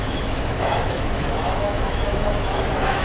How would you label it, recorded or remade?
remade